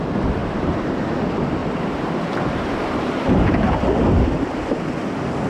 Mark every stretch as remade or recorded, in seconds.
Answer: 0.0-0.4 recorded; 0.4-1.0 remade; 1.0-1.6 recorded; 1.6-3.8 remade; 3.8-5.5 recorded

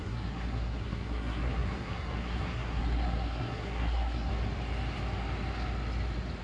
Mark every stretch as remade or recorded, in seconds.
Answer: 0.0-4.3 remade; 4.3-6.4 recorded

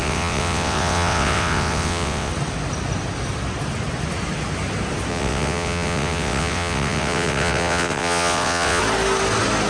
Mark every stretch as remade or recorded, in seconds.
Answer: 0.0-2.3 remade; 2.3-5.1 recorded; 5.1-8.8 remade; 8.8-9.7 recorded

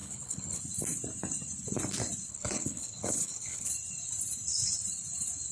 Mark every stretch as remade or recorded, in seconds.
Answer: 0.0-0.6 remade; 0.6-2.3 recorded; 2.3-3.7 remade; 3.7-5.5 recorded

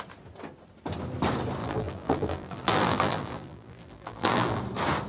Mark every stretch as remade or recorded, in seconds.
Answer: 0.0-1.6 recorded; 1.6-4.6 remade; 4.6-5.1 recorded

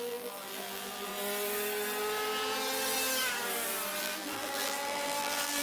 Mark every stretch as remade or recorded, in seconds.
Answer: 0.0-1.1 remade; 1.1-4.0 recorded; 4.0-5.6 remade

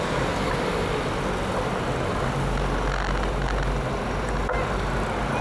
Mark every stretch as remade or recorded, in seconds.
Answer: 0.0-5.4 recorded